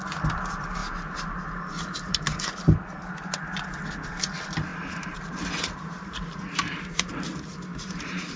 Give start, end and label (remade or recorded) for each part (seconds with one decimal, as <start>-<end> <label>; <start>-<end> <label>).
0.0-0.8 recorded; 0.8-2.2 remade; 2.2-4.7 recorded; 4.7-7.1 remade; 7.1-7.7 recorded; 7.7-8.4 remade